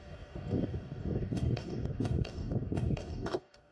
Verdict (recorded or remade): remade